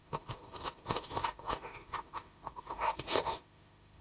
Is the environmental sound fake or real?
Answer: fake